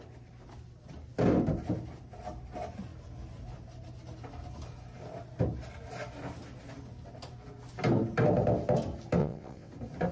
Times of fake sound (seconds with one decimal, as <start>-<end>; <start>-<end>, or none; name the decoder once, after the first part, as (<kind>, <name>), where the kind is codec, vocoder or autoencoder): 9.2-9.7 (vocoder, WaveNeXt)